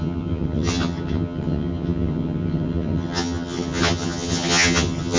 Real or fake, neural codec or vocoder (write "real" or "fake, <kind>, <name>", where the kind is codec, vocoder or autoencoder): fake, vocoder, HiFi-GAN